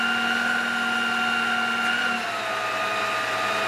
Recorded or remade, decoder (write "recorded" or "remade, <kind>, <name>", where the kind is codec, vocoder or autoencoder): recorded